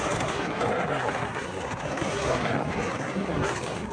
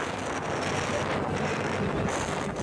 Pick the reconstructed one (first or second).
first